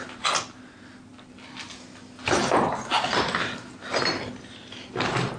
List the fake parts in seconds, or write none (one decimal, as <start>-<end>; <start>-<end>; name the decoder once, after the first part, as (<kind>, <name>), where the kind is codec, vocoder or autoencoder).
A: none

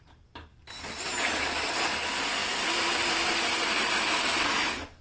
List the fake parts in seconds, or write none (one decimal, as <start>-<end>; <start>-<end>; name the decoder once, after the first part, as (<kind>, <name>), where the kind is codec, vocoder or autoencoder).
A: none